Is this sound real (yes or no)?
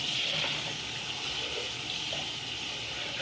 yes